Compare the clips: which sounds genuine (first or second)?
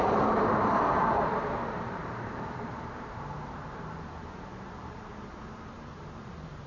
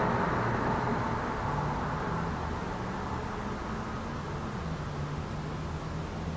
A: second